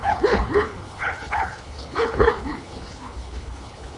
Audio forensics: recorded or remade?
remade